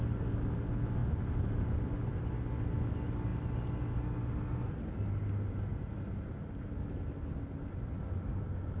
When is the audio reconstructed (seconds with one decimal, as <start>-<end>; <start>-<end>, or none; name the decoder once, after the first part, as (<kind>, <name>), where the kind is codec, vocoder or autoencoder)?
1.0-2.3 (vocoder, BigVGAN v2)